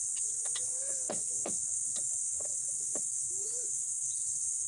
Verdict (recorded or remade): remade